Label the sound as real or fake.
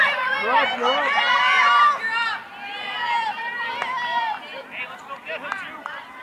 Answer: fake